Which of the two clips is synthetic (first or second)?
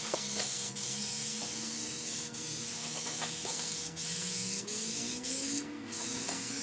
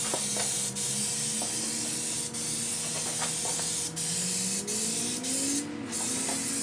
first